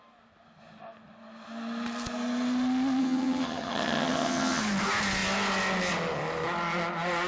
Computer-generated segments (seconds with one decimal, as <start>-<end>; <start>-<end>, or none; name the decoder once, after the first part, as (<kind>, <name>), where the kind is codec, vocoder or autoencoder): 3.0-4.6 (vocoder, HiFi-GAN)